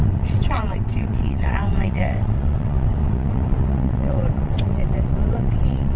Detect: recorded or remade remade